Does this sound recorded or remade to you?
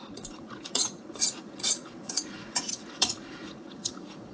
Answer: remade